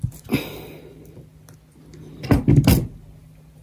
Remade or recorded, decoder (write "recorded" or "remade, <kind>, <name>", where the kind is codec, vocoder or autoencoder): recorded